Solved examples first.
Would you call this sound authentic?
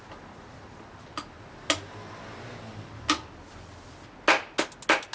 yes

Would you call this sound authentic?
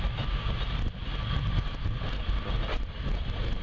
yes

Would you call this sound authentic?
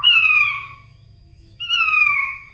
no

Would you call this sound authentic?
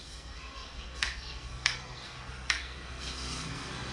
no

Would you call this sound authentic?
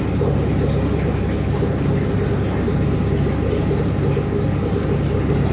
yes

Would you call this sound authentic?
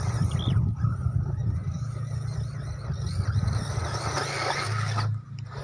yes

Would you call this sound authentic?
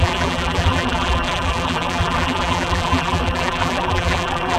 no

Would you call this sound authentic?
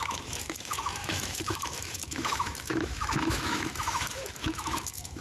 no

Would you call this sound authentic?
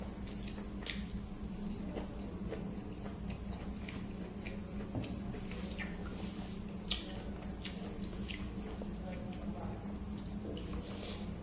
yes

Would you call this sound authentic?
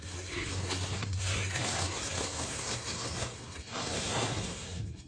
no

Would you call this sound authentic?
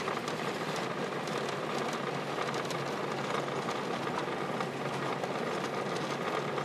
yes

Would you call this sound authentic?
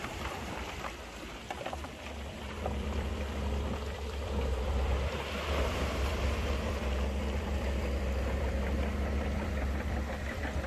no